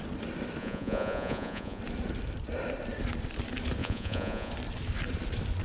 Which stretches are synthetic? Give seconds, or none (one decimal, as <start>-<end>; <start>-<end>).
0.6-1.8; 3.8-4.5